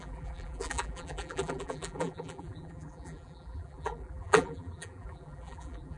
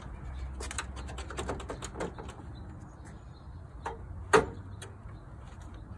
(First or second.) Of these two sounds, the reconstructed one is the first